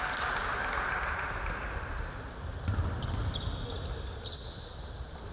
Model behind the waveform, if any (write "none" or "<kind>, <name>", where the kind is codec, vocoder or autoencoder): none